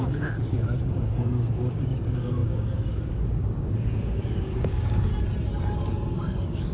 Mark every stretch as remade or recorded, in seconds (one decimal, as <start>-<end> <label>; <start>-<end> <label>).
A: 0.0-5.1 remade; 5.1-6.1 recorded; 6.1-6.7 remade